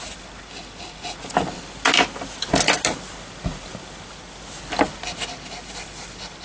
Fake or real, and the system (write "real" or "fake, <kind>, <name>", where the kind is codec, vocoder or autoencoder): real